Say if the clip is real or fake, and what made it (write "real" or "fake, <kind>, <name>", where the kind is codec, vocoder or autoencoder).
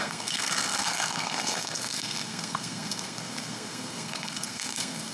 fake, codec, SNAC